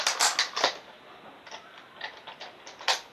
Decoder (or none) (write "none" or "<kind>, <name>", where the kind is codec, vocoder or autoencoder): none